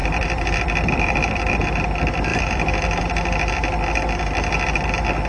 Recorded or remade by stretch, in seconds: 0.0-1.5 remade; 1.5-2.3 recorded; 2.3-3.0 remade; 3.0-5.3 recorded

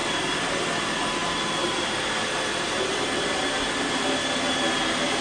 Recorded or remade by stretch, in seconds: 0.0-0.6 remade; 0.6-1.2 recorded; 1.2-3.7 remade; 3.7-5.2 recorded